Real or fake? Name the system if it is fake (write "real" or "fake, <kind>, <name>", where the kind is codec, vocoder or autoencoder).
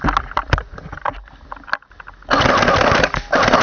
real